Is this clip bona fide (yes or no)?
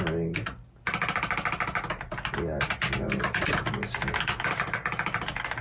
yes